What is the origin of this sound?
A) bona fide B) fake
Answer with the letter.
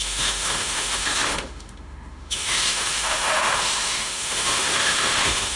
B